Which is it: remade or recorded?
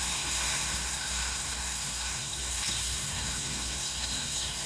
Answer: remade